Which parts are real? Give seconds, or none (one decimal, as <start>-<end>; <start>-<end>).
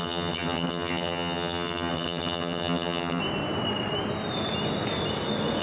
3.2-5.6